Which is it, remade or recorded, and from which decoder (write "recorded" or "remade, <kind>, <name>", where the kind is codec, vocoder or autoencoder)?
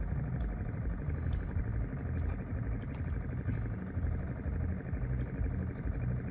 recorded